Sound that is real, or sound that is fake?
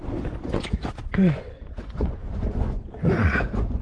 fake